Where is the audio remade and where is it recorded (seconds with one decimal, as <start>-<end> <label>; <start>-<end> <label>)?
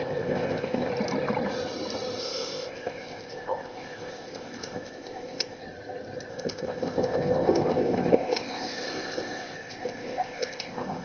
0.0-0.9 remade; 0.9-2.2 recorded; 2.2-5.6 remade; 5.6-6.3 recorded; 6.3-11.0 remade